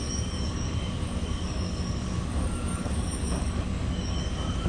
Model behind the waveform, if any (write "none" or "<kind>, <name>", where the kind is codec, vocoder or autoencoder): codec, DAC